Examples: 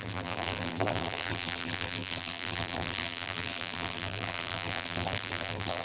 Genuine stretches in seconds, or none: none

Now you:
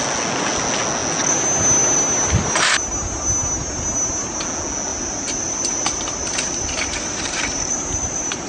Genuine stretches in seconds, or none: 0.0-4.9

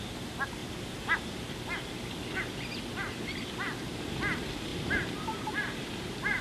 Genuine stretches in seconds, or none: 0.0-0.6; 1.4-4.7; 5.5-6.4

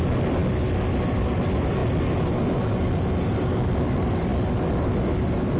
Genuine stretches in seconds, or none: 0.4-1.0; 1.8-3.7; 4.3-5.6

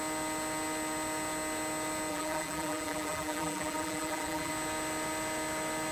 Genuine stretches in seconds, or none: 0.0-2.1; 4.5-5.9

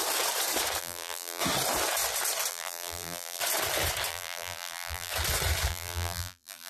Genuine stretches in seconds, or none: 0.0-0.8; 1.4-2.5; 3.4-4.1; 5.1-5.7

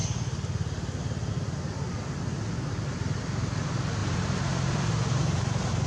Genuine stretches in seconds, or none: 0.0-4.0; 4.9-5.9